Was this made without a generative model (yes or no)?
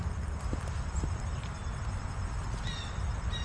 yes